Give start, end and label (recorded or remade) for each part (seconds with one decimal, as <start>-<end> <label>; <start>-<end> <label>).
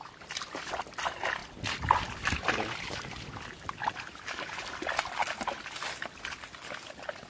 0.0-7.3 recorded